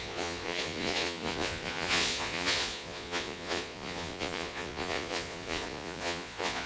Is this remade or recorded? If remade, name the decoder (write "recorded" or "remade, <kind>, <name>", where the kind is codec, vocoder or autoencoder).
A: remade, vocoder, Vocos